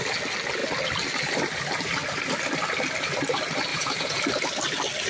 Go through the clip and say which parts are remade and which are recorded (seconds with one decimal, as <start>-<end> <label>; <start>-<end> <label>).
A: 0.0-3.7 recorded; 3.7-4.2 remade; 4.2-5.1 recorded